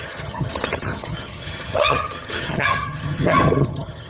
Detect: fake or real fake